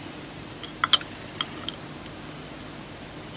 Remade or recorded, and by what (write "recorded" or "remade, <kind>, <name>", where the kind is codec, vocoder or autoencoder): remade, vocoder, BigVGAN v2